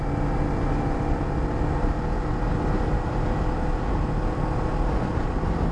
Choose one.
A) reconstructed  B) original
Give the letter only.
B